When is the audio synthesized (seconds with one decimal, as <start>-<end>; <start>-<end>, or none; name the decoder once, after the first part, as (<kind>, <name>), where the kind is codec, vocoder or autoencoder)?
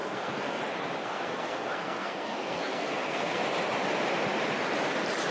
0.0-0.6 (codec, SNAC); 1.0-3.4